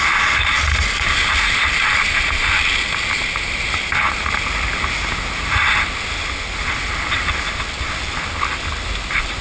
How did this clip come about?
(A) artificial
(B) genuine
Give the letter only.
B